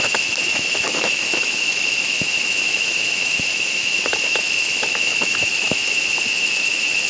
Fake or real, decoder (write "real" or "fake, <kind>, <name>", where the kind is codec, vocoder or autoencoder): fake, autoencoder, DAC-VAE